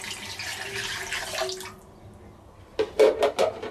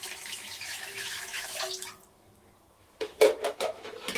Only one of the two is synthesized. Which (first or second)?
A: second